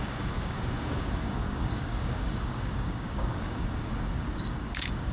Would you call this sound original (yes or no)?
no